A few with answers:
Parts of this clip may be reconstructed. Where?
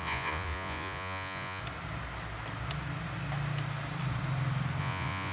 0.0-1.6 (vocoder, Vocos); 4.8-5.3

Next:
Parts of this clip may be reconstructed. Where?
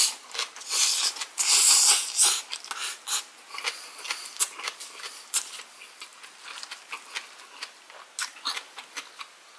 none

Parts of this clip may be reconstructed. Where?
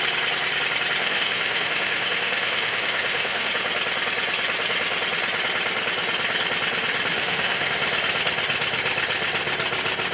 1.0-3.5 (autoencoder, DAC-VAE); 7.1-7.7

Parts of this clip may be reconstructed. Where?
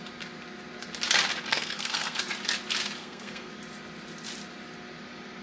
1.5-2.2 (codec, SNAC); 3.0-3.5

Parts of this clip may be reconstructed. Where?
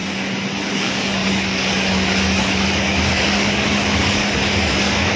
0.7-5.2 (codec, DAC)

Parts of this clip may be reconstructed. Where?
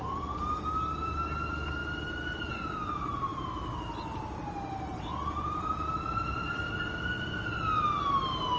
none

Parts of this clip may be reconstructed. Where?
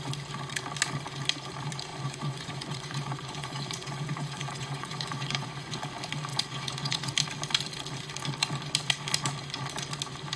1.9-5.8 (vocoder, Vocos); 6.3-7.1